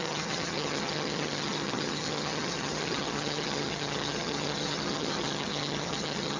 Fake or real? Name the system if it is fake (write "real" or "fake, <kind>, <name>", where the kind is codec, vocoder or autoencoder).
fake, vocoder, HiFi-GAN